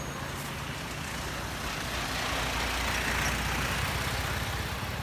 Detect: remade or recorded recorded